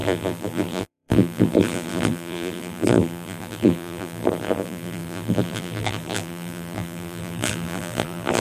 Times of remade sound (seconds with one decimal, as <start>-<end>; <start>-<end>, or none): 0.0-8.4